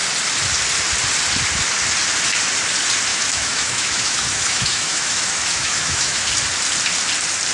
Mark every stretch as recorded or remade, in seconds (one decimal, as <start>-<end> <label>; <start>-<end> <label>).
0.0-3.1 recorded; 3.1-6.3 remade; 6.3-7.5 recorded